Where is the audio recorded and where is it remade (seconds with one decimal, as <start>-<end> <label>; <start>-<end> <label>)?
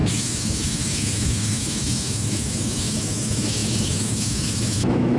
0.0-5.2 remade